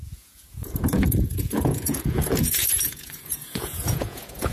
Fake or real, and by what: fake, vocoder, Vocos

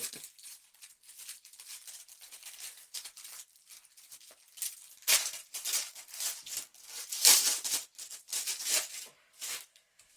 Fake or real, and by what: fake, vocoder, BigVGAN v2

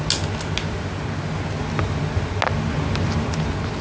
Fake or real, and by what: real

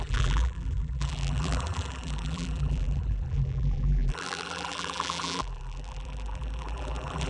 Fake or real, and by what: fake, vocoder, BigVGAN v2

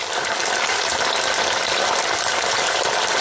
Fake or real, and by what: real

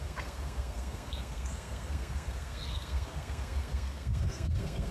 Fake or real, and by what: fake, codec, SNAC